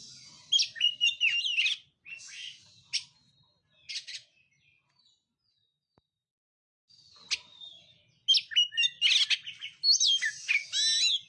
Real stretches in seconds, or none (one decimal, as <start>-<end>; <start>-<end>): 0.0-11.3